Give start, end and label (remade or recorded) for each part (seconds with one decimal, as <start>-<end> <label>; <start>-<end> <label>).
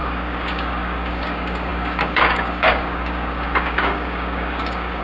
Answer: 0.0-5.0 remade